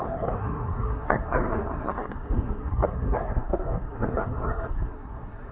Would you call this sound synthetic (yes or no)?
yes